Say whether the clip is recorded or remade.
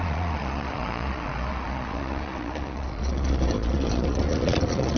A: remade